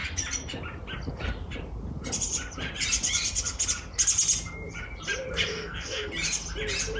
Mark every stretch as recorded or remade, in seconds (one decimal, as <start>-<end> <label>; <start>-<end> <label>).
0.0-5.5 recorded; 5.5-6.1 remade; 6.1-7.0 recorded